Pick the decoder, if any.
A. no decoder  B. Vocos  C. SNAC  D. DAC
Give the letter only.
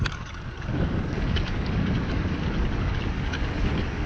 D